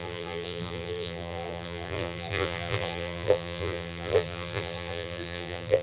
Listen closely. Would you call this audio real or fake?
fake